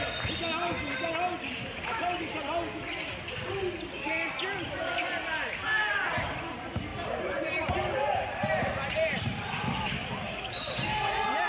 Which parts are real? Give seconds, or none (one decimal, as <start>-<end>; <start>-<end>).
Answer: 0.0-6.9; 9.8-11.5